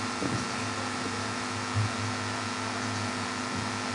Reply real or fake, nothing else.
real